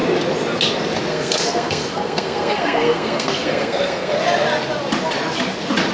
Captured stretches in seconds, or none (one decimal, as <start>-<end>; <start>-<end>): 0.0-1.1; 4.2-5.9